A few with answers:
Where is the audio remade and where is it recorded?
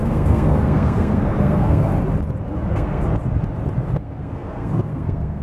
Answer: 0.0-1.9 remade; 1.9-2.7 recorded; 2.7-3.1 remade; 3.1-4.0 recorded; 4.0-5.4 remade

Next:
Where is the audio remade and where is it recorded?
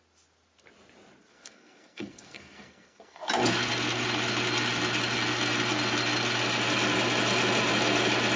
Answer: 0.0-1.3 recorded; 1.3-3.3 remade; 3.3-8.4 recorded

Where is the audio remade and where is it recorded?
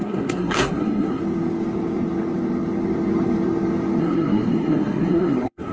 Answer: 0.0-1.2 remade; 1.2-4.0 recorded; 4.0-5.7 remade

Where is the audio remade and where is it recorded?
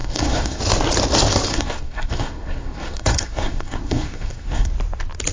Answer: 0.0-0.6 remade; 0.6-1.5 recorded; 1.5-4.7 remade; 4.7-5.3 recorded